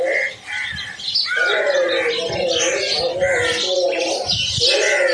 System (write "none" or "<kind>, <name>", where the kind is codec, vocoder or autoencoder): none